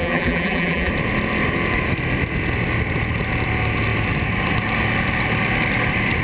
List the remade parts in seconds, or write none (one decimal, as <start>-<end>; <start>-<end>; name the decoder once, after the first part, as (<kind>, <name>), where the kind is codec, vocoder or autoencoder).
0.0-0.9 (vocoder, BigVGAN v2)